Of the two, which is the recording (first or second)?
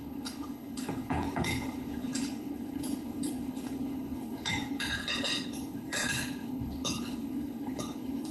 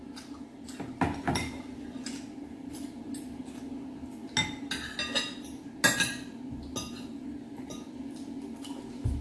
second